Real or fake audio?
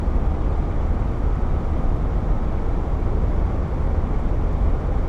real